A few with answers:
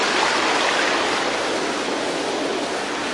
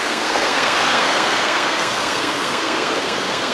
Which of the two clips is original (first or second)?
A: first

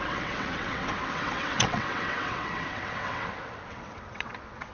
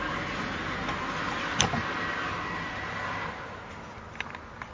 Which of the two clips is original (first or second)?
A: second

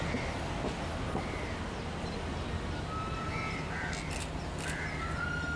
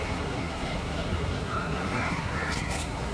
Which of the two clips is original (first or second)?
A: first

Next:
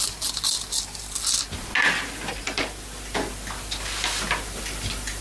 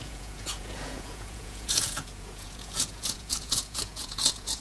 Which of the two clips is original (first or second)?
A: first